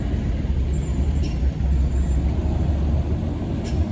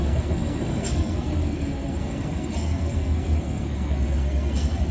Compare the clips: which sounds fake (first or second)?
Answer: second